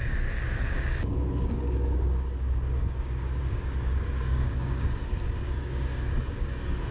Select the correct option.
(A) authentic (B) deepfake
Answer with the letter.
B